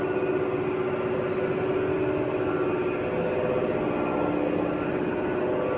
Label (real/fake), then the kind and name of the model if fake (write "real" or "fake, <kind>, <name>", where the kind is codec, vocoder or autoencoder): real